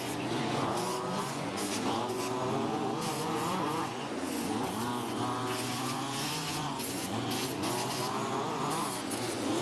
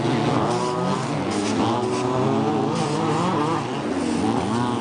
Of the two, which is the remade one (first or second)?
first